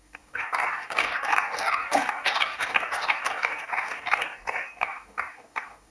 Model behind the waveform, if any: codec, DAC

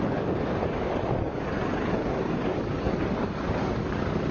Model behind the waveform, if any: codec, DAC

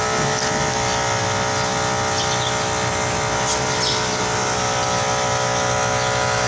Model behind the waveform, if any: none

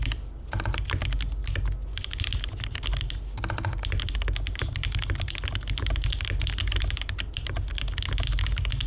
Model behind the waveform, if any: none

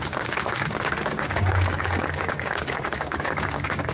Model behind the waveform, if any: codec, DAC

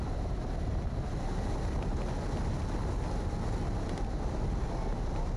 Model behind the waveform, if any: none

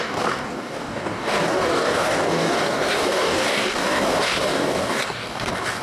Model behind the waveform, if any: codec, DAC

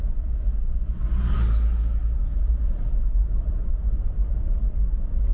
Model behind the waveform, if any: none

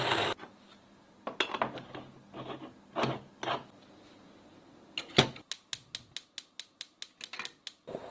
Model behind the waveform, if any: none